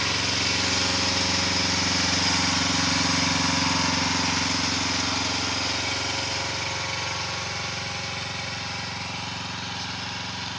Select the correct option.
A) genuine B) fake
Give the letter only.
A